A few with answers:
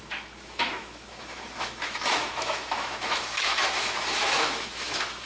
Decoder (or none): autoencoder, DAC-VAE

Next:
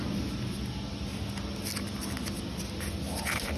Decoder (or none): none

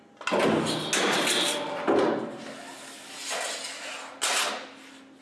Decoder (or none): none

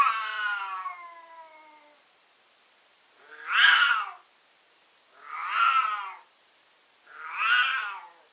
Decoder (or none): none